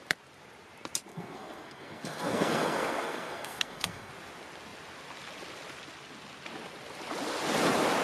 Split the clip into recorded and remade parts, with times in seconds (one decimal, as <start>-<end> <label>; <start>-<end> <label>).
0.0-1.1 recorded; 1.1-4.1 remade; 4.1-8.0 recorded